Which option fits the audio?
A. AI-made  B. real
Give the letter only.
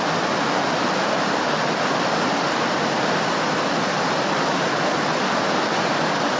B